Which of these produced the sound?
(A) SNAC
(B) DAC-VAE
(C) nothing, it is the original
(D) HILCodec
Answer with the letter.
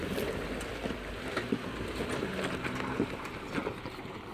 C